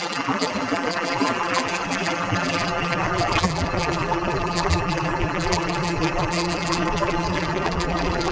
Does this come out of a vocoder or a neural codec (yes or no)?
yes